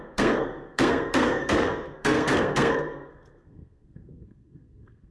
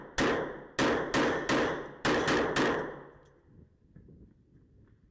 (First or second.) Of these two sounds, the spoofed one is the first